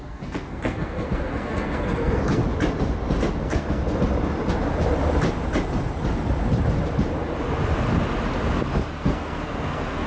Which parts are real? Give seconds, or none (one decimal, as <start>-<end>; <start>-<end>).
2.4-3.4; 3.8-8.9

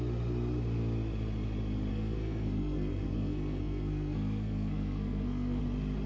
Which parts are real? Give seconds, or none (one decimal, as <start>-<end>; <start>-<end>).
0.0-1.9; 5.6-6.1

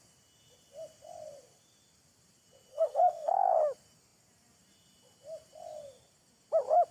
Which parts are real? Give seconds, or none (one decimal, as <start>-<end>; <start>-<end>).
0.0-2.7; 3.6-6.9

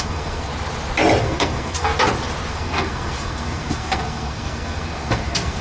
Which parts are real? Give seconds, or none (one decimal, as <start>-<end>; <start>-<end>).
0.5-1.2; 1.9-2.5

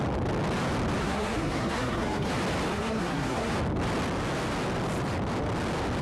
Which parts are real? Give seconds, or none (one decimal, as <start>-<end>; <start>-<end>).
0.0-1.0; 2.3-2.7; 3.5-6.0

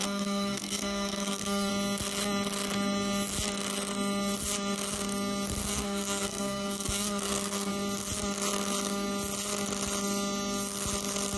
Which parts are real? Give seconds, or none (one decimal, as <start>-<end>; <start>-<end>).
1.7-5.6; 7.7-11.4

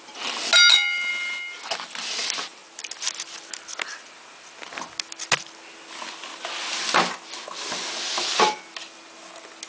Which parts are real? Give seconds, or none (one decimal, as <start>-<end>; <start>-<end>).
0.0-9.7

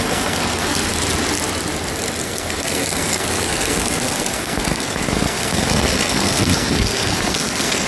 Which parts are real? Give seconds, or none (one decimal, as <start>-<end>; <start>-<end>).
0.9-2.2